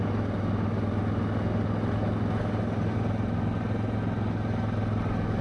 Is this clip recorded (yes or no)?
yes